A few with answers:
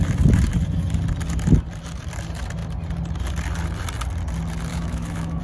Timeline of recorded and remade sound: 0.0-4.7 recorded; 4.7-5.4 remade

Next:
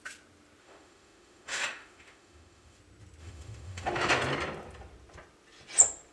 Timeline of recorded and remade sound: 0.0-0.6 recorded; 0.6-2.8 remade; 2.8-3.2 recorded; 3.2-4.1 remade; 4.1-6.1 recorded

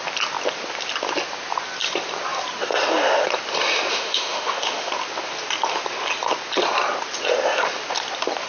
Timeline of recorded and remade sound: 0.0-3.9 recorded; 3.9-4.9 remade; 4.9-8.5 recorded

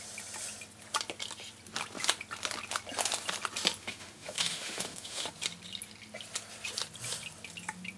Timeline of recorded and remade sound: 0.0-3.8 recorded; 3.8-5.3 remade; 5.3-8.0 recorded

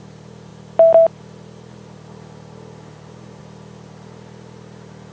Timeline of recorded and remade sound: 0.0-5.1 recorded

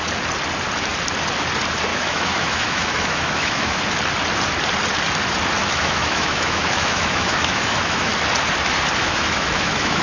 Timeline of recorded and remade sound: 0.0-1.9 recorded; 1.9-3.8 remade; 3.8-5.6 recorded; 5.6-8.1 remade; 8.1-9.0 recorded; 9.0-10.0 remade

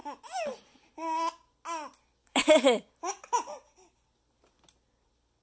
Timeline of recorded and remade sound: 0.0-2.2 recorded; 2.2-2.9 remade; 2.9-5.4 recorded

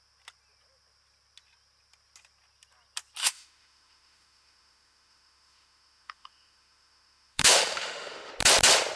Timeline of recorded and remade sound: 0.0-3.2 recorded; 3.2-8.3 remade; 8.3-9.0 recorded